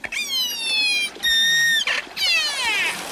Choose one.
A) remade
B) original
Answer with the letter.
B